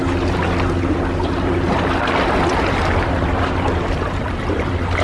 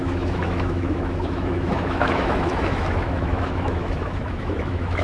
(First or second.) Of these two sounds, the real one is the first